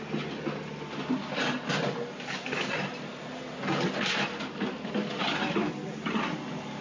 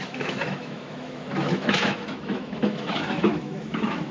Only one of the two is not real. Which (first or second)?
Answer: second